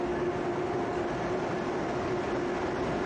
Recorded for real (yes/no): yes